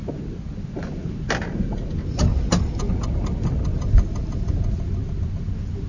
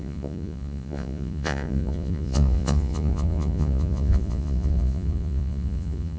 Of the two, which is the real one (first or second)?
first